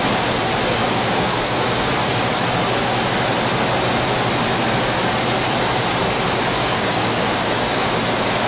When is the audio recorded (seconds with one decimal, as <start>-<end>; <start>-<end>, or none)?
0.0-0.8; 2.4-6.6; 8.0-8.5